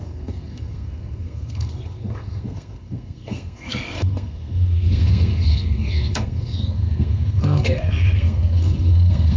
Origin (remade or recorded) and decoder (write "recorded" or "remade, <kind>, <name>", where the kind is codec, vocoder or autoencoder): remade, codec, SNAC